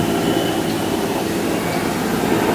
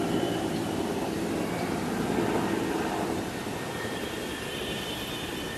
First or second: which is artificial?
second